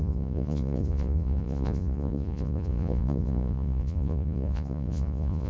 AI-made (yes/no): yes